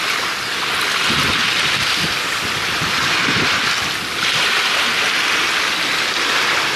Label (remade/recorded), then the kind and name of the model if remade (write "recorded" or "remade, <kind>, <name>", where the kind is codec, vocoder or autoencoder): recorded